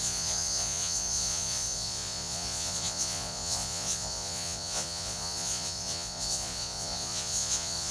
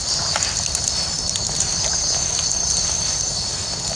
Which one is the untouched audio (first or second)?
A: second